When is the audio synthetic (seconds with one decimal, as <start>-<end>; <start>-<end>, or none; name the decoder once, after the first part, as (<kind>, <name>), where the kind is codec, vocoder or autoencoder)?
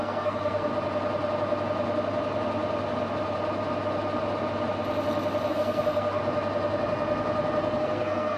0.0-0.7 (codec, SNAC); 5.5-6.2; 7.8-8.4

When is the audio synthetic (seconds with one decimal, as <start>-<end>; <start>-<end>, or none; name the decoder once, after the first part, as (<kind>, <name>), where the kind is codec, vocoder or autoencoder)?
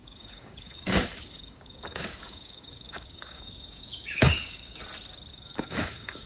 0.0-4.8 (codec, DAC); 5.3-6.3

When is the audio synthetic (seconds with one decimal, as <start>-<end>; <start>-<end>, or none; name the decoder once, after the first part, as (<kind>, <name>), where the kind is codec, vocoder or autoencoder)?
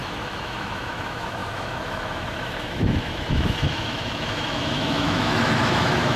0.0-6.2 (autoencoder, DAC-VAE)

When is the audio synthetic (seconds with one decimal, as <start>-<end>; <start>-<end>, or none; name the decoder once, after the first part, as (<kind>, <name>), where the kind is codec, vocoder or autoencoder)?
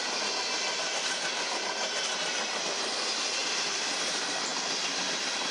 3.4-4.1 (vocoder, BigVGAN v2); 4.5-5.5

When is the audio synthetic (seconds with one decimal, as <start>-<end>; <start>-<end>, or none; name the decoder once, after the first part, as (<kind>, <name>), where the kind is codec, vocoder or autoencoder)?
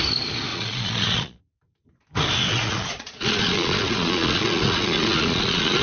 0.5-1.4 (vocoder, Vocos); 2.5-5.8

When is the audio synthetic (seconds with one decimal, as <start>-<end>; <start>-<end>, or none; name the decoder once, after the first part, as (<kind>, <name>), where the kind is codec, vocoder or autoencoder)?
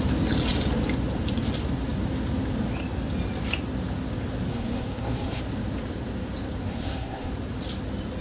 4.5-5.4 (codec, SNAC); 6.6-7.3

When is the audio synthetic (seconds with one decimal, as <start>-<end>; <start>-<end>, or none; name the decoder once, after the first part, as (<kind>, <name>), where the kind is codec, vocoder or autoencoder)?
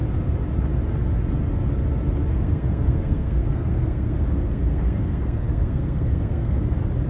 2.3-6.6 (codec, SNAC)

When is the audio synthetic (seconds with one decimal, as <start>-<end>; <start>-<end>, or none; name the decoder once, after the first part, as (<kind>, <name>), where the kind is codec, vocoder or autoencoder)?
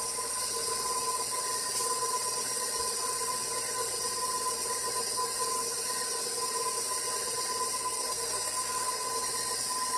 7.8-9.1 (codec, SNAC)